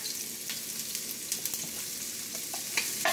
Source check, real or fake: real